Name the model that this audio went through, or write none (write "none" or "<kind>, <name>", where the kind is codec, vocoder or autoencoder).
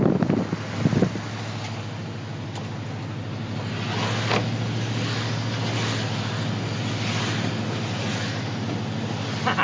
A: none